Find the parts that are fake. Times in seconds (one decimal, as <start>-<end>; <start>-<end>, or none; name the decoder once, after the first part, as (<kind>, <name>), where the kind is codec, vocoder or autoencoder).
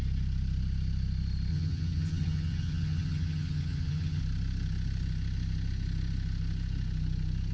1.5-4.2 (vocoder, HiFi-GAN)